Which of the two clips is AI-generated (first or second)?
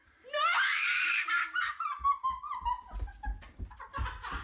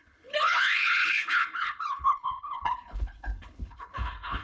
second